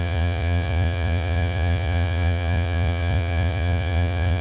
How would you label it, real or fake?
fake